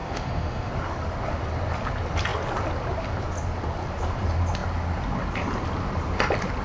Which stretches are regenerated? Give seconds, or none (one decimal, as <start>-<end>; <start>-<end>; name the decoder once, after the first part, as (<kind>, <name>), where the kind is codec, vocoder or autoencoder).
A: 0.0-0.7 (autoencoder, DAC-VAE)